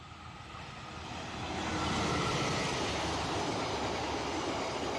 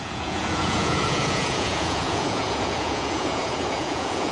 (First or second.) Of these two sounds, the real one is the first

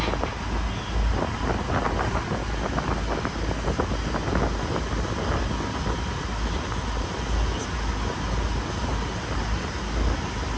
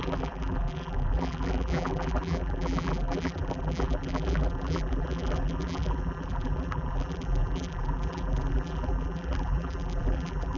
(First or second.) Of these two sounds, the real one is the first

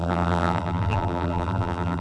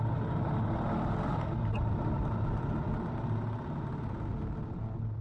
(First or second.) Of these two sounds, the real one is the second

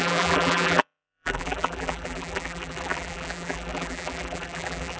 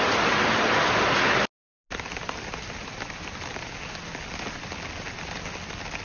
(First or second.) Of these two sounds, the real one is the second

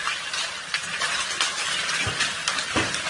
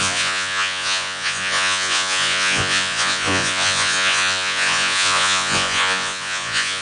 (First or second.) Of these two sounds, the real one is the first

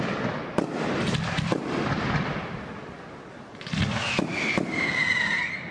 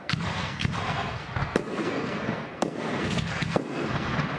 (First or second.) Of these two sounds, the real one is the first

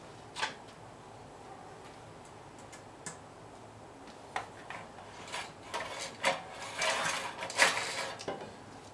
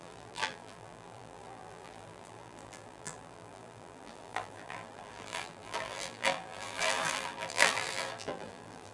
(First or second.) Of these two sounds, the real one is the first